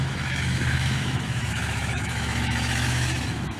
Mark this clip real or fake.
fake